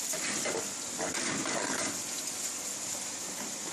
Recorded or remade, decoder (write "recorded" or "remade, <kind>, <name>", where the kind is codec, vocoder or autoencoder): recorded